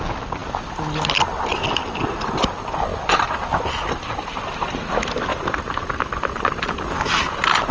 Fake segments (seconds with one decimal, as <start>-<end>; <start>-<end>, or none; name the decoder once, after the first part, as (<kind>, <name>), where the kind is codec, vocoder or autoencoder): none